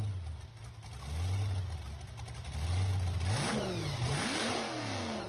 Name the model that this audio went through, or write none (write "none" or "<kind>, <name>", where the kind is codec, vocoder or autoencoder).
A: none